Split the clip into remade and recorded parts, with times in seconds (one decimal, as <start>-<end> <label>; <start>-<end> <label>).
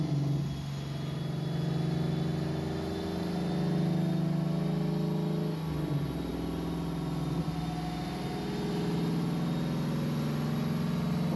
0.0-11.4 recorded